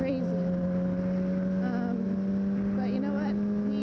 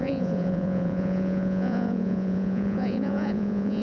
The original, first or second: first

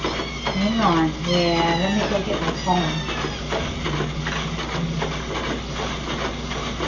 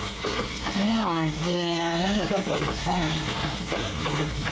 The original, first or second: first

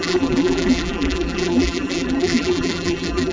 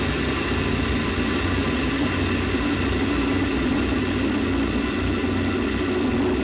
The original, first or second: second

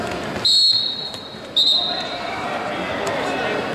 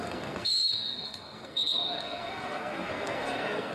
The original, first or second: first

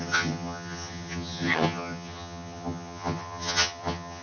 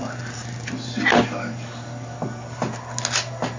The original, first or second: second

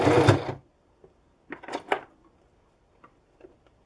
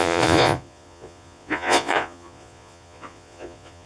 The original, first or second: first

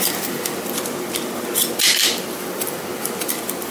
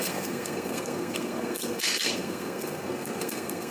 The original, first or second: first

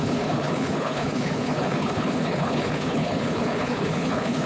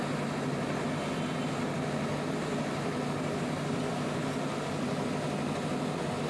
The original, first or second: second